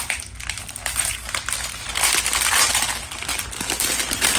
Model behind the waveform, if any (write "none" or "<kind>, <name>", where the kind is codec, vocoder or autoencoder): none